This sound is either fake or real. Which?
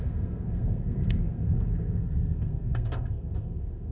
fake